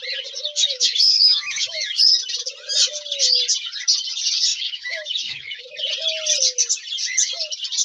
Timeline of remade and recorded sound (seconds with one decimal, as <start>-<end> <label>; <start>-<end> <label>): 0.0-0.6 recorded; 0.6-2.0 remade; 2.0-4.5 recorded; 4.5-5.6 remade; 5.6-7.8 recorded